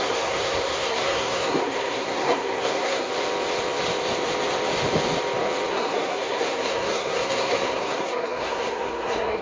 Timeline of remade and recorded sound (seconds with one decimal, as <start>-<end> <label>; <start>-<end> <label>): 0.0-3.1 remade; 3.1-5.7 recorded; 5.7-9.4 remade